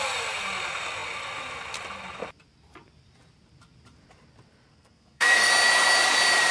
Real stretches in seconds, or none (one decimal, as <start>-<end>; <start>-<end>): 0.0-4.7; 5.5-6.5